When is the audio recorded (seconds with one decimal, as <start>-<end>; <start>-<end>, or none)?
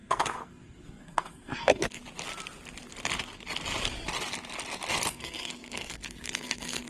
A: 2.0-5.1